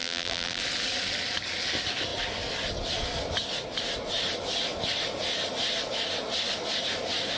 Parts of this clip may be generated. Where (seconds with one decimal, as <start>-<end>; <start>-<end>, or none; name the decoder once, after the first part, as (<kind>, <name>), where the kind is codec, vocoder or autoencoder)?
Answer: 0.0-0.6 (vocoder, BigVGAN v2)